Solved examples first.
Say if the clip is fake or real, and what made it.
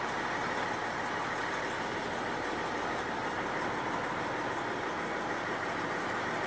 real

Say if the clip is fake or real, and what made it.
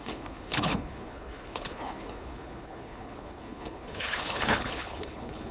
fake, codec, HILCodec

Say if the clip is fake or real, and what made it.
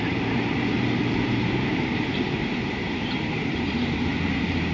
fake, vocoder, BigVGAN v2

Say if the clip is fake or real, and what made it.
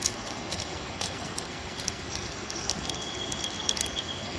fake, codec, SNAC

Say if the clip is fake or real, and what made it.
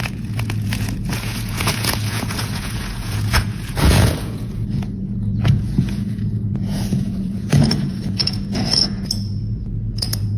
fake, vocoder, Vocos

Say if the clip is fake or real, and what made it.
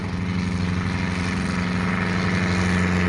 real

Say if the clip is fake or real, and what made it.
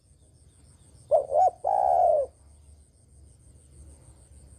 real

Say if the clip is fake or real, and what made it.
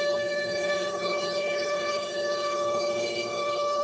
fake, codec, HILCodec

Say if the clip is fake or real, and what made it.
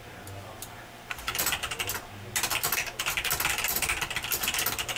real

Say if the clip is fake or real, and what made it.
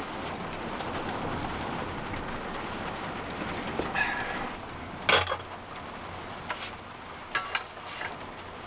real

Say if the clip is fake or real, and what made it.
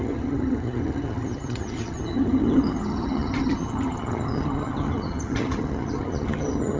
fake, vocoder, HiFi-GAN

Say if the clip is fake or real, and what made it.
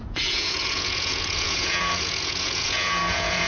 fake, vocoder, Vocos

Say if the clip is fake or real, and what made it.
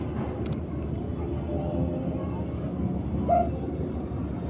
real